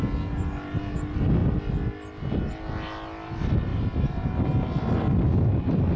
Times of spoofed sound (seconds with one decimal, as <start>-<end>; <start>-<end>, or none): none